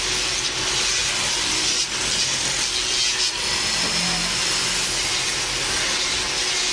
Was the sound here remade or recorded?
recorded